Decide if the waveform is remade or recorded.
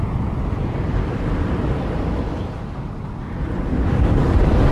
recorded